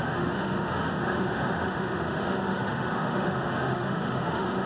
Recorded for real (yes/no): no